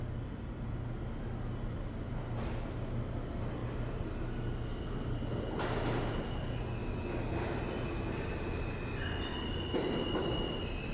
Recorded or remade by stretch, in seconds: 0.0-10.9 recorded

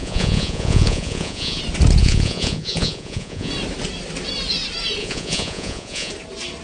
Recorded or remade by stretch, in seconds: 0.0-1.6 remade; 1.6-2.0 recorded; 2.0-3.5 remade; 3.5-5.0 recorded; 5.0-6.1 remade; 6.1-6.6 recorded

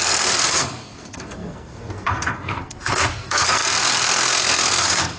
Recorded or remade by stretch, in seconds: 0.0-5.2 remade

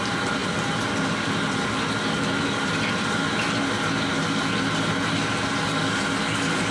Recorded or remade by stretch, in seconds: 0.0-6.7 recorded

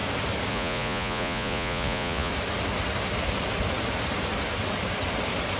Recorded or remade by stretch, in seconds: 0.0-0.5 recorded; 0.5-2.3 remade; 2.3-5.6 recorded

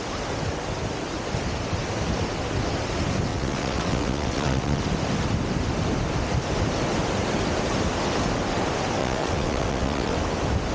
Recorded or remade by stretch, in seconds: 0.0-3.3 recorded; 3.3-4.8 remade; 4.8-9.0 recorded; 9.0-10.2 remade; 10.2-10.7 recorded

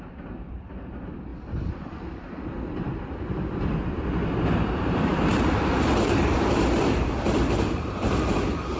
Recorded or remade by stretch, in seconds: 0.0-1.3 remade; 1.3-4.5 recorded; 4.5-8.8 remade